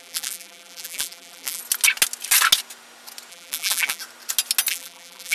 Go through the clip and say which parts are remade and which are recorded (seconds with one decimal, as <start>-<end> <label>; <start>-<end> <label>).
0.0-1.6 remade; 1.6-3.3 recorded; 3.3-4.0 remade; 4.0-4.7 recorded; 4.7-5.3 remade